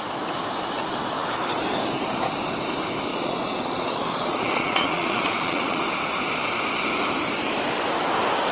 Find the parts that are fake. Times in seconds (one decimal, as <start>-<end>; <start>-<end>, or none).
3.1-5.8